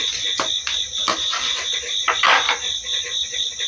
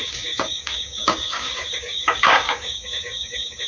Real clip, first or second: first